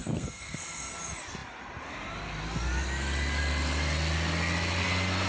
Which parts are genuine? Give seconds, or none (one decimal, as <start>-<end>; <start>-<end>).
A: 0.9-5.3